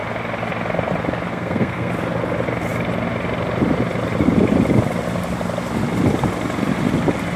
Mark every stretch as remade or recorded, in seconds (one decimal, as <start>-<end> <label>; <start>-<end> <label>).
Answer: 0.0-1.3 recorded; 1.3-1.9 remade; 1.9-7.4 recorded